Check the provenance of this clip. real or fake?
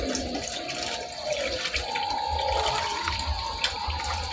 real